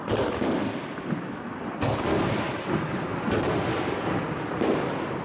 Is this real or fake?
real